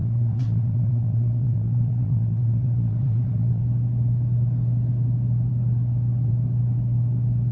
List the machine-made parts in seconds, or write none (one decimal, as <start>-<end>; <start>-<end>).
0.0-3.6